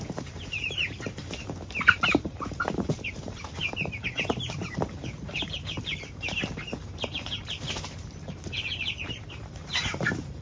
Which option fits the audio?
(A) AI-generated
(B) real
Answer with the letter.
A